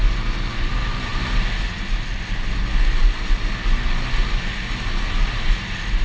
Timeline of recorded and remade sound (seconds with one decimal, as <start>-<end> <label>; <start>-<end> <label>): 0.0-6.0 recorded